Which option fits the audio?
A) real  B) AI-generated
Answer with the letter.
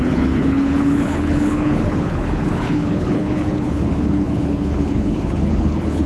B